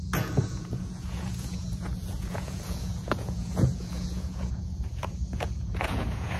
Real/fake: fake